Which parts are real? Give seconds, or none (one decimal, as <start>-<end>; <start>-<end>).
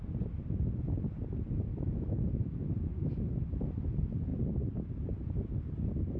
0.0-1.7; 3.1-6.2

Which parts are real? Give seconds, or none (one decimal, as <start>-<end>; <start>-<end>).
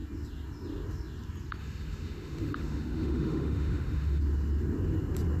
0.0-1.6; 4.2-5.4